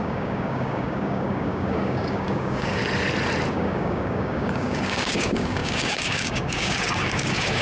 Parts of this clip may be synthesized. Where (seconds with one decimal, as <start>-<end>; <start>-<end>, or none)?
0.0-2.8; 3.5-7.6